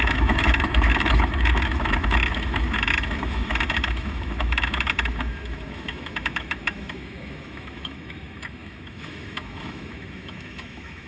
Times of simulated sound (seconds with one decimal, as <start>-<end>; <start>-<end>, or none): 0.0-11.1